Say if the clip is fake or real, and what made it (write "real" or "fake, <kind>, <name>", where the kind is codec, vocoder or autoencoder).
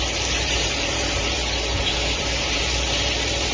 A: fake, vocoder, BigVGAN v2